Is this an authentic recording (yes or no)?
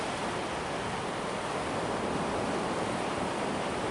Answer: yes